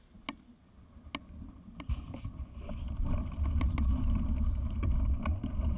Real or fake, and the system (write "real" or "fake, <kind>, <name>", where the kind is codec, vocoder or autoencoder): real